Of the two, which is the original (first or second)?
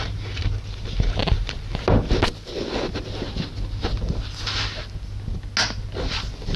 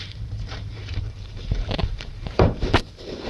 first